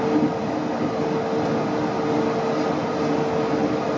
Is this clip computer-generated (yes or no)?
no